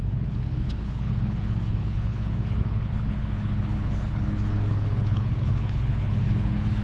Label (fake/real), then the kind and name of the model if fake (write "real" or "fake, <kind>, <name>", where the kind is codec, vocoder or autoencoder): fake, codec, HILCodec